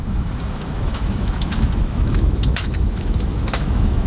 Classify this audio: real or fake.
fake